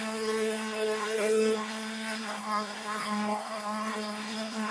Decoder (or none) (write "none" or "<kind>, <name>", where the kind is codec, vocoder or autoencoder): codec, SNAC